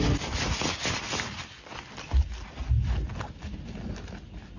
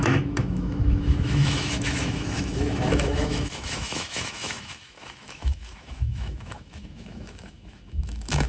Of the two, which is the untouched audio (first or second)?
first